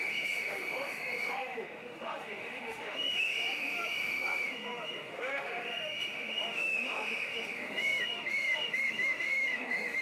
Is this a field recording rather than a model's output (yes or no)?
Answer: no